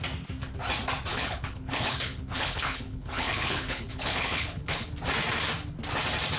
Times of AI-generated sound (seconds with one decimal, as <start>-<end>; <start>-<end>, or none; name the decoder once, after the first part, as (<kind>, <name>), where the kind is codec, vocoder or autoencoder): 1.1-4.9 (codec, HILCodec)